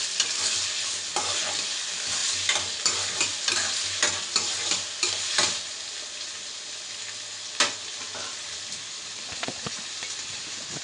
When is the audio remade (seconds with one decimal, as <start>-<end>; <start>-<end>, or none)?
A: none